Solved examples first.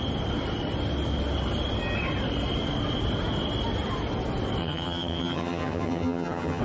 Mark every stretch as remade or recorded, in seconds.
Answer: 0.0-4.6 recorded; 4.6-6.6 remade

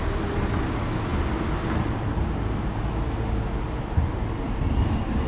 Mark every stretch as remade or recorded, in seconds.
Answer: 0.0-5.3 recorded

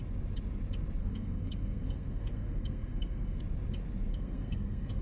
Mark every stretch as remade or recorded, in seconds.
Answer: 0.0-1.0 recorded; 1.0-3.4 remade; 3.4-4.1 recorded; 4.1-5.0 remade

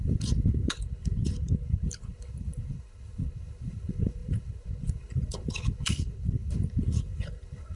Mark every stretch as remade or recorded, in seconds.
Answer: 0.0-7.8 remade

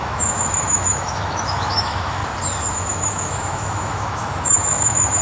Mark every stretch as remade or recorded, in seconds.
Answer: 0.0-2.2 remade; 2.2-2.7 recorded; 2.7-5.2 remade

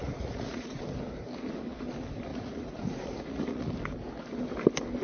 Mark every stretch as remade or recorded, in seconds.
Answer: 0.0-0.8 remade; 0.8-2.3 recorded; 2.3-3.7 remade; 3.7-5.0 recorded

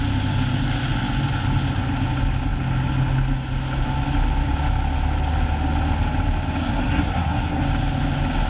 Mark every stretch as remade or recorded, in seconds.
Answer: 0.0-6.6 recorded; 6.6-7.6 remade; 7.6-8.5 recorded

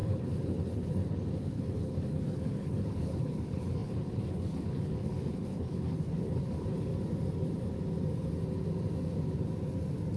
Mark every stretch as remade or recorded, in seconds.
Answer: 0.0-6.9 remade; 6.9-10.2 recorded